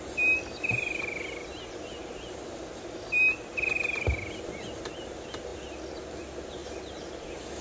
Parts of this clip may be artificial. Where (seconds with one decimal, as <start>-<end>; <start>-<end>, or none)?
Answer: none